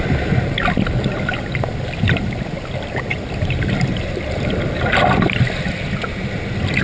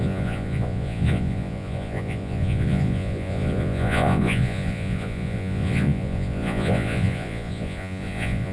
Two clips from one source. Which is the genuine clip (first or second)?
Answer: first